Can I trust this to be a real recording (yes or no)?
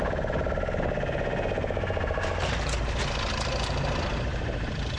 yes